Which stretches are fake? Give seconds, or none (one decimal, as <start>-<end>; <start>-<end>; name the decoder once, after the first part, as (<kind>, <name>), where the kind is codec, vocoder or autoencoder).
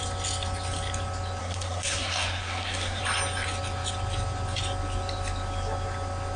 1.4-3.0 (codec, SNAC)